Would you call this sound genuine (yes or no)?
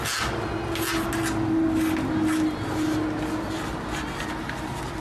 yes